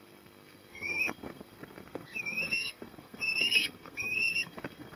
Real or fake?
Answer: fake